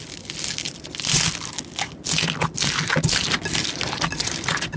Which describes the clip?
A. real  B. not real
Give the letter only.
A